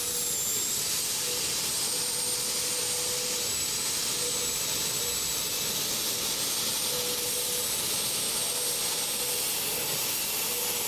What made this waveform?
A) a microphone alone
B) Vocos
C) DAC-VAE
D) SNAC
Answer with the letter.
A